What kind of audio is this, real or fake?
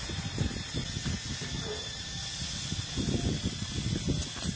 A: real